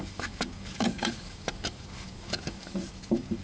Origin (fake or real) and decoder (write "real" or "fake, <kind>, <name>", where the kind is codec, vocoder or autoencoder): fake, codec, DAC